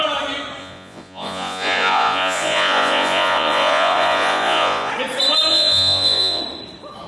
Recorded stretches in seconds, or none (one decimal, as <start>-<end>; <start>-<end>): 0.0-0.6; 4.9-5.5; 6.4-7.1

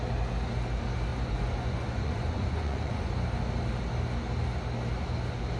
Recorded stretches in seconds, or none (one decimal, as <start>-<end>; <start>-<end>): 0.0-1.1; 3.1-5.6

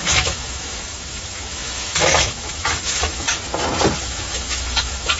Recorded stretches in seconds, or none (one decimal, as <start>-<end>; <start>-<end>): 3.3-4.0

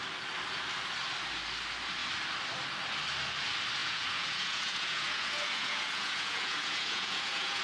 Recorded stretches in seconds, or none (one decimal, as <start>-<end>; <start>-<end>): 0.0-3.8